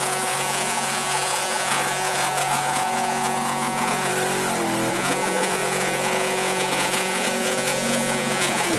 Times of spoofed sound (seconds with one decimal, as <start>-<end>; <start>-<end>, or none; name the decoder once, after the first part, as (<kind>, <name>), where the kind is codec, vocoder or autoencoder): 0.0-4.1 (vocoder, Vocos); 4.9-8.8